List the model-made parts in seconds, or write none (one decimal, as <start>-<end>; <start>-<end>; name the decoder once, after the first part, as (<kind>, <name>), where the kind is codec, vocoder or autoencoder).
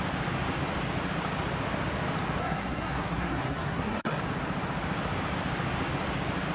2.4-4.2 (codec, SNAC)